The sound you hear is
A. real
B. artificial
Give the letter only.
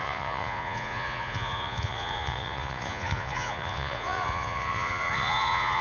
B